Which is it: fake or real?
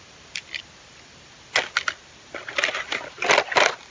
real